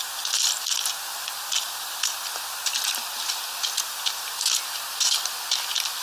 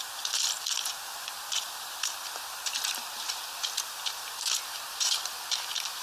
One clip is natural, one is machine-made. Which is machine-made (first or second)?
second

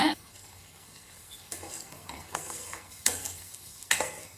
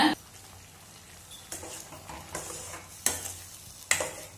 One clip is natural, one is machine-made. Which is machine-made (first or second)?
first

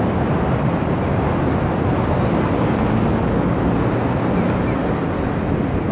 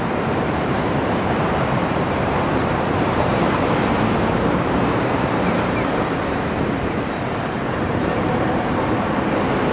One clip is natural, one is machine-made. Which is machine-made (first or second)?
second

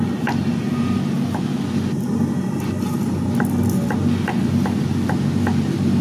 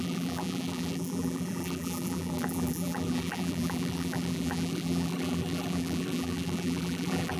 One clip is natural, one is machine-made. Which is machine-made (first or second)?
second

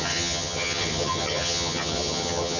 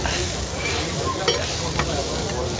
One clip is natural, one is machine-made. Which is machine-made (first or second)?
first